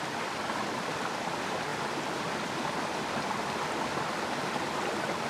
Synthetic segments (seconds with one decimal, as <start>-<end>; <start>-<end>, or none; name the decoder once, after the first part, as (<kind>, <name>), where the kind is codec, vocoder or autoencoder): none